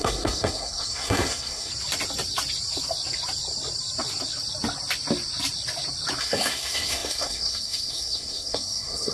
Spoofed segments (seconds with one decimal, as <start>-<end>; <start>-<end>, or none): 0.0-1.7; 6.2-9.1